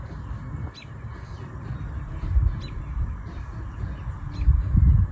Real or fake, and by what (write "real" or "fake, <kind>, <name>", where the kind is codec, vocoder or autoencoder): real